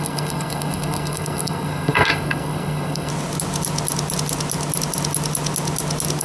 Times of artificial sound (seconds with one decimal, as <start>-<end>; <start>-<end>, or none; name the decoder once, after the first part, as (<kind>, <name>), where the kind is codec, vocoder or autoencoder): 0.0-3.1 (codec, SNAC)